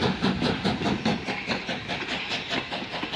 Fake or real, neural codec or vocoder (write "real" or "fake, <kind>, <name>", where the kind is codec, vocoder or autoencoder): real